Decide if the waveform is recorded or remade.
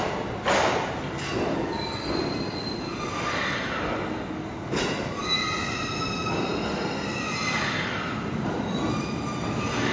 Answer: recorded